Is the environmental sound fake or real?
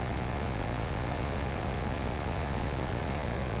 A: fake